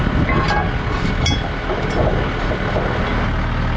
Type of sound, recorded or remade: recorded